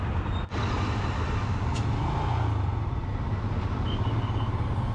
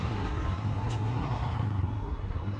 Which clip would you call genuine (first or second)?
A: first